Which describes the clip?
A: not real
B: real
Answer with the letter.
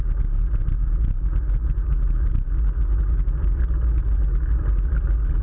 B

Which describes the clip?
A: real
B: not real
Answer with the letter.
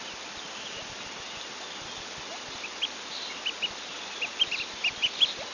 A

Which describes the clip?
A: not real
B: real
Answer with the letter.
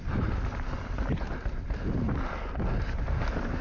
B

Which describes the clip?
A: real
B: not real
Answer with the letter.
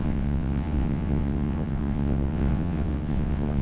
B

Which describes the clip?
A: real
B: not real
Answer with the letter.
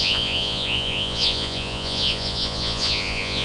B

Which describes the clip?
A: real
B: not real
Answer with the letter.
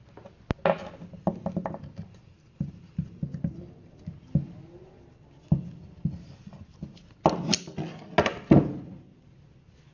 A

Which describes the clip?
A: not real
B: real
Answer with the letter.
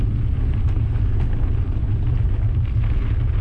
B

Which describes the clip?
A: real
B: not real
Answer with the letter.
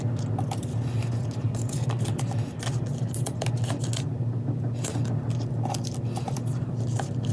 A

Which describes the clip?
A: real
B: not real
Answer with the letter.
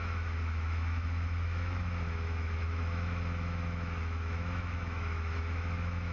B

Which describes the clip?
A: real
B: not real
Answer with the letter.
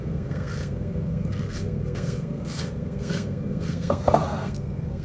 B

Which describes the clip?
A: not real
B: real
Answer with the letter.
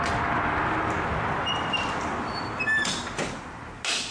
B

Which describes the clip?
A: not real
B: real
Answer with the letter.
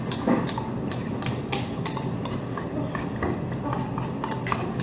B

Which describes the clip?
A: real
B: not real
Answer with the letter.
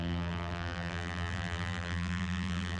B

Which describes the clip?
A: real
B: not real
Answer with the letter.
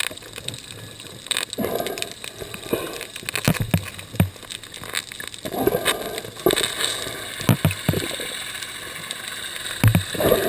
A